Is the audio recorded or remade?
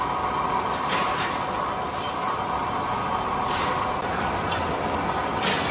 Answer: recorded